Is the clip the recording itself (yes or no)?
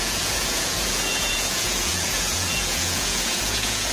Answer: no